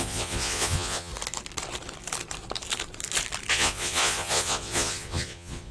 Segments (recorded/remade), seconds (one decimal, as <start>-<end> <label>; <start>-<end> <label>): 0.0-1.1 remade; 1.1-3.5 recorded; 3.5-5.7 remade